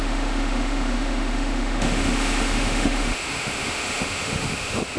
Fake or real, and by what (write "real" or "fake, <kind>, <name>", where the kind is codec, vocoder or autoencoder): fake, autoencoder, DAC-VAE